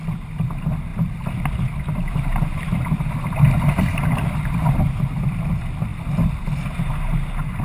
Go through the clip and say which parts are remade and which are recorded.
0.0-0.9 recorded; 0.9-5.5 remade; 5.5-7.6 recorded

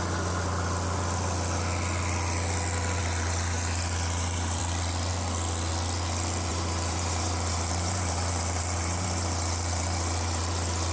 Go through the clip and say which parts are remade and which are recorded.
0.0-3.0 recorded; 3.0-4.6 remade; 4.6-6.5 recorded; 6.5-10.9 remade

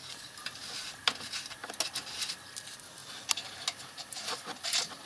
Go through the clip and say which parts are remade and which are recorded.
0.0-5.1 recorded